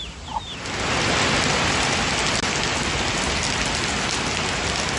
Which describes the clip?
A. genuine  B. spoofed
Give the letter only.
A